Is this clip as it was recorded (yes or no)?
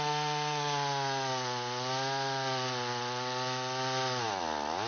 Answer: yes